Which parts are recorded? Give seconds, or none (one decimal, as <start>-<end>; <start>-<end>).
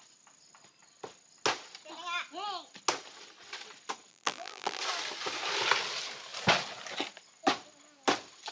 0.0-4.1; 4.8-8.5